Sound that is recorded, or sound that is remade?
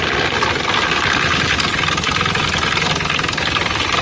recorded